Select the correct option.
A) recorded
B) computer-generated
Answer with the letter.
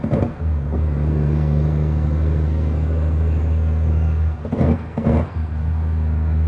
B